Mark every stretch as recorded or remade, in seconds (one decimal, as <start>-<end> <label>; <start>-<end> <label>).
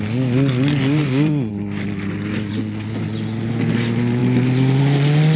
0.0-1.0 recorded; 1.0-1.5 remade; 1.5-5.4 recorded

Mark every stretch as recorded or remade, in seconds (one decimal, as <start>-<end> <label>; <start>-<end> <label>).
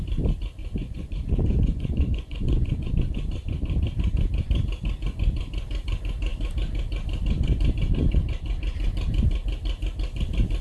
0.0-0.6 recorded; 0.6-2.9 remade; 2.9-10.6 recorded